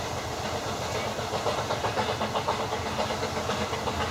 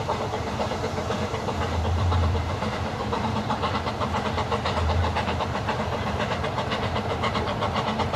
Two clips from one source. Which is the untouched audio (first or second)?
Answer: first